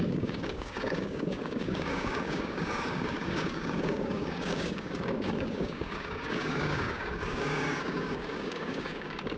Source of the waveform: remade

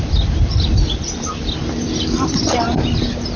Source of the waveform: recorded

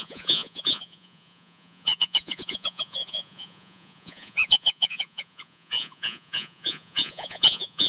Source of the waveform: remade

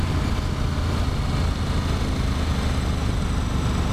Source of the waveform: recorded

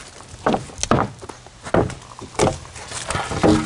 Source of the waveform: recorded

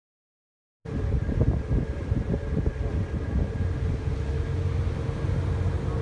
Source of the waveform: recorded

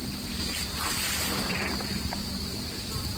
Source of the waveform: remade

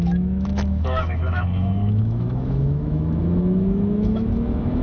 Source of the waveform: remade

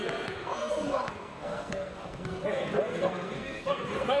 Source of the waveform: remade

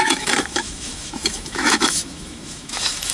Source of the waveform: remade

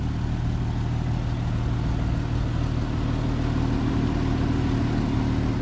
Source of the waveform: recorded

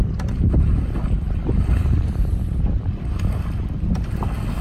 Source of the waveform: recorded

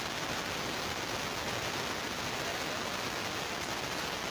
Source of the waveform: recorded